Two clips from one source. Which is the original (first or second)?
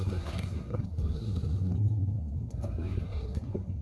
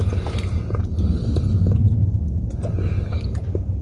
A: second